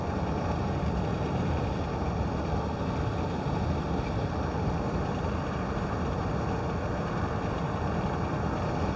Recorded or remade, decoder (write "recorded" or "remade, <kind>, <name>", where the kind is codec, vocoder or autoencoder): recorded